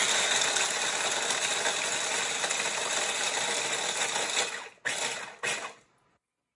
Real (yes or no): yes